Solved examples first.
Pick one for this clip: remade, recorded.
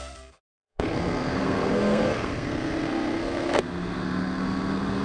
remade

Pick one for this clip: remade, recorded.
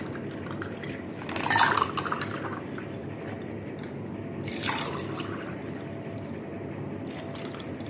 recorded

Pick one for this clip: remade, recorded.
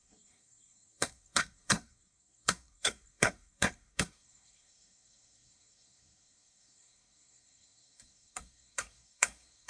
remade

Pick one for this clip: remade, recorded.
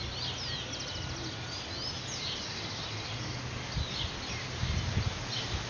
recorded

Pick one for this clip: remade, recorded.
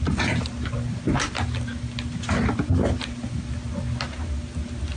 recorded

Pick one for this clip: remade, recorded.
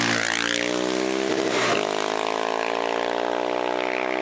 recorded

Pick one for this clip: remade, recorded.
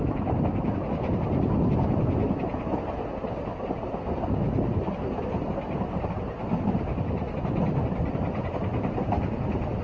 recorded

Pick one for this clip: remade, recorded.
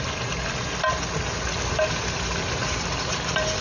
recorded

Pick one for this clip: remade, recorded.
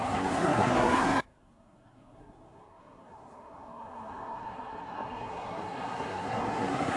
remade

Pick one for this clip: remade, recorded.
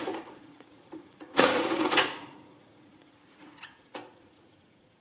remade